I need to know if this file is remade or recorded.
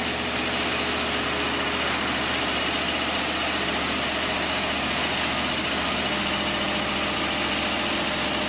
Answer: recorded